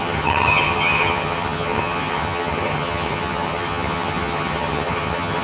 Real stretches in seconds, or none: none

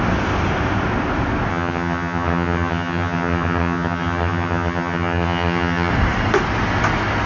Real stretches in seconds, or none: 0.0-1.5; 5.9-7.3

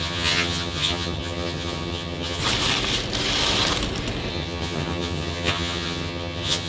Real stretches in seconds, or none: 2.4-4.3

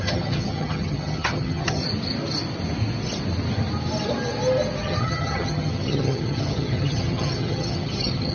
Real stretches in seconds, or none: 1.8-4.8

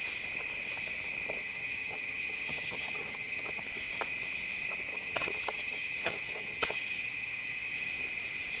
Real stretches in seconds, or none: 0.0-1.4; 3.6-4.9; 7.9-8.6

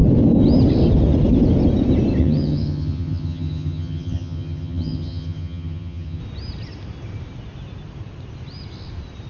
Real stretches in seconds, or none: 0.0-2.2; 6.2-9.3

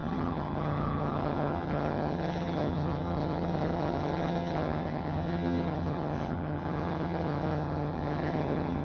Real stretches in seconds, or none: none